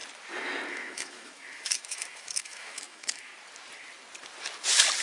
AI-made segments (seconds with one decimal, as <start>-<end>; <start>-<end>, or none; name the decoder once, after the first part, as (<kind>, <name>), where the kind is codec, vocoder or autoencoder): 0.7-3.3 (autoencoder, DAC-VAE)